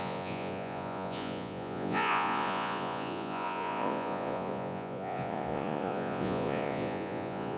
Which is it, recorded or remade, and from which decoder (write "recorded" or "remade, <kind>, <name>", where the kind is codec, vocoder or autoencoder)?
remade, vocoder, Vocos